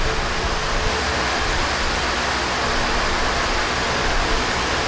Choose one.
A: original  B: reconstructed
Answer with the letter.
A